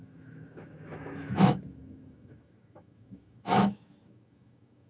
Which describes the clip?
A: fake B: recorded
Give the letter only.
A